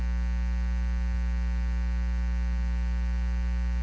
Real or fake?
real